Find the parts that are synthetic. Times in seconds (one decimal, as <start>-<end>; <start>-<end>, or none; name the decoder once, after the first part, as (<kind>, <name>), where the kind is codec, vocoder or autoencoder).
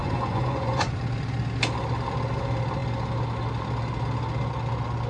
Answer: 0.0-1.0 (vocoder, Vocos)